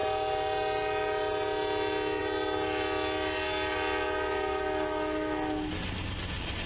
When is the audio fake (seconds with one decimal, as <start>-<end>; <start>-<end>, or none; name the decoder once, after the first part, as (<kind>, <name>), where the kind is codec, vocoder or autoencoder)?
none